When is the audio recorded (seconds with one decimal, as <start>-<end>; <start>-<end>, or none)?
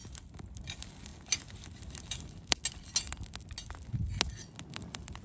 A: 0.0-5.2